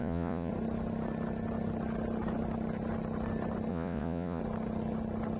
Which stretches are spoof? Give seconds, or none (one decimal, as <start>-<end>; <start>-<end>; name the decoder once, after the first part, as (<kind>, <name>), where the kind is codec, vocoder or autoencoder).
0.0-0.5 (vocoder, Vocos); 3.7-4.4